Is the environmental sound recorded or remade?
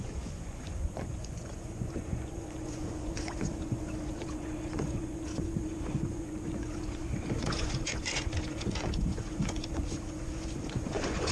remade